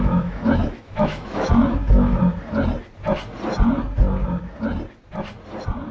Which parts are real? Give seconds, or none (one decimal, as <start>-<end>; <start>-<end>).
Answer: 2.2-5.9